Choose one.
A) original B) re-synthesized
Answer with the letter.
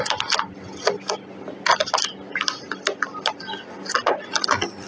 A